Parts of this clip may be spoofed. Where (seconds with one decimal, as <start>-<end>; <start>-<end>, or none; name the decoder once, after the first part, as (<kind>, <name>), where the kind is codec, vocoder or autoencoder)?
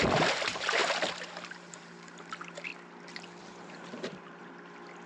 0.0-0.8 (vocoder, BigVGAN v2); 1.7-2.7; 3.4-4.4